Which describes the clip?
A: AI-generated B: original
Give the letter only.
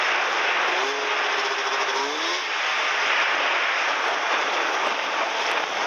B